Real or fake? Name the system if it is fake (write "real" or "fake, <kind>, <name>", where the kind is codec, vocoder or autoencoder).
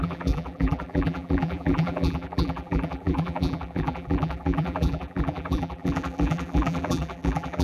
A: fake, vocoder, BigVGAN v2